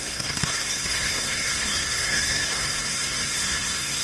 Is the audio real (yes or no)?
no